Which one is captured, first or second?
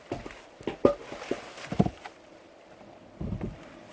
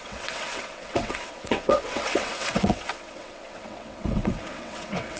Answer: first